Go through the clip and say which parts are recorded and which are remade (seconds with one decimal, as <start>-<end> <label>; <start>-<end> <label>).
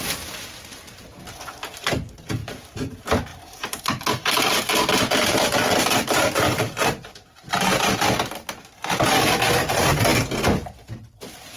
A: 0.0-2.4 recorded; 2.4-2.9 remade; 2.9-3.3 recorded; 3.3-7.9 remade; 7.9-11.6 recorded